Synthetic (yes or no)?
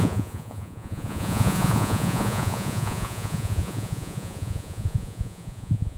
yes